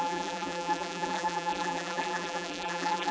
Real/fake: fake